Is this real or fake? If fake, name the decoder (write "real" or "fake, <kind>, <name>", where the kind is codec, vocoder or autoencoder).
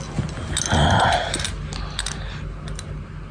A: real